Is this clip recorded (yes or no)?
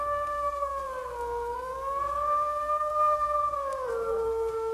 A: no